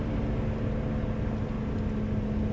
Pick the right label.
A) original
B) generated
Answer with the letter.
A